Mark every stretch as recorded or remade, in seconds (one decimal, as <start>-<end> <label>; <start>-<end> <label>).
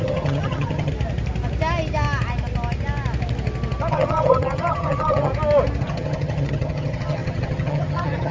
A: 0.0-0.9 remade; 0.9-3.9 recorded; 3.9-5.3 remade; 5.3-5.8 recorded; 5.8-8.3 remade